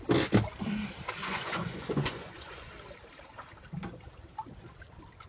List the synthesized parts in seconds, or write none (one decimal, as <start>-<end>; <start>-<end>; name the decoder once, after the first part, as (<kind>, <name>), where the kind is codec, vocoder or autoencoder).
1.2-2.7 (vocoder, Vocos)